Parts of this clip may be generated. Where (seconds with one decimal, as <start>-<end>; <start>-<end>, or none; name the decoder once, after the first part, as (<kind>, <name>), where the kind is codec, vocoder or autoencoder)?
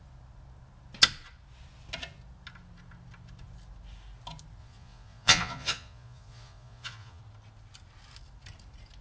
4.6-7.2 (vocoder, Vocos)